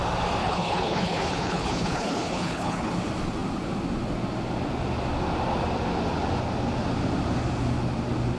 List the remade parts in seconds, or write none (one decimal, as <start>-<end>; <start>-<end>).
0.4-2.9